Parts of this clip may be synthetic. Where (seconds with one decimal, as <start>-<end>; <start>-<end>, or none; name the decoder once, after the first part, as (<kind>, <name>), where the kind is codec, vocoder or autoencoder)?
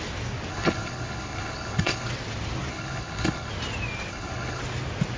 0.5-2.1 (codec, HILCodec); 2.7-3.5; 4.1-4.6